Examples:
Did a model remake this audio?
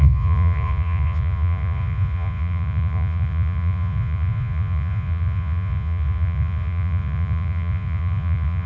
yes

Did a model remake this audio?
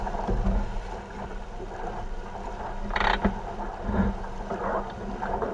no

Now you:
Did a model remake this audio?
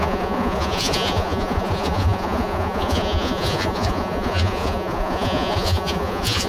yes